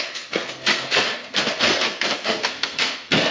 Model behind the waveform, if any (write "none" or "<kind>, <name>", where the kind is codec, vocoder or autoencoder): codec, SNAC